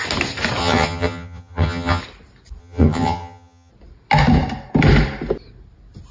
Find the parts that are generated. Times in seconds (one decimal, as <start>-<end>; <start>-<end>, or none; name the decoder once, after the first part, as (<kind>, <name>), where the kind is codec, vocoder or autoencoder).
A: 0.6-2.0 (vocoder, HiFi-GAN); 2.6-3.7